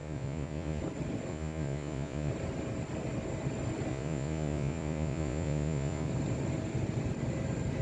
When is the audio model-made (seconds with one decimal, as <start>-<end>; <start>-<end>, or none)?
0.0-0.8; 1.3-2.3; 3.9-6.1